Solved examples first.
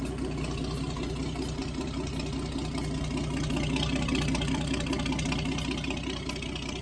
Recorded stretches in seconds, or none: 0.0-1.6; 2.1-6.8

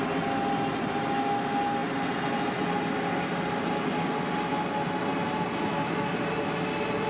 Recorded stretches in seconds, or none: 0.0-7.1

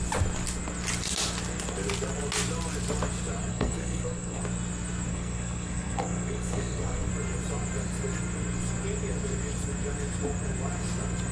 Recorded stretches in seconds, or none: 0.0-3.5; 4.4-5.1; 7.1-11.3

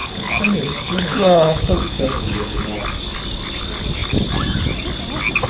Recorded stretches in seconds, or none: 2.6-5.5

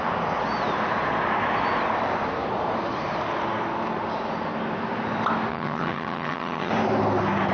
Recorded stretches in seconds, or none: 0.0-5.5; 6.7-7.5